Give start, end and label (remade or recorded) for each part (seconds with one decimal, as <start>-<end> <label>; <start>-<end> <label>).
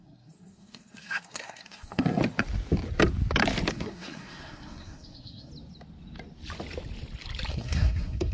0.0-2.2 remade; 2.2-3.7 recorded; 3.7-5.5 remade; 5.5-7.5 recorded; 7.5-8.3 remade